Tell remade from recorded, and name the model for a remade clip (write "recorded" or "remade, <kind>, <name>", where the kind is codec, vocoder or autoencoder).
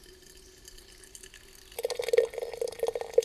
recorded